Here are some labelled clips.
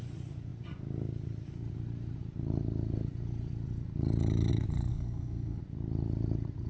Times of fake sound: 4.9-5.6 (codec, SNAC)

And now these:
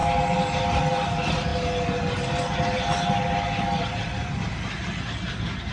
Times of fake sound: none

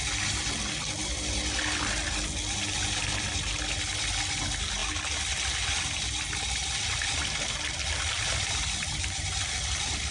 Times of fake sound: none

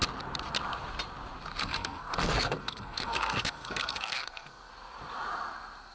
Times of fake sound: 1.6-4.7 (codec, SNAC)

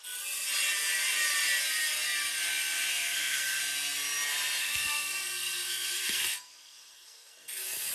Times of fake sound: 2.9-3.6 (codec, SNAC); 4.6-7.9

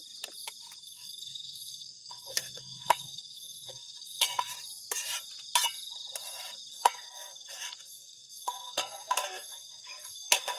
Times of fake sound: 0.8-4.5 (codec, SNAC); 6.7-10.6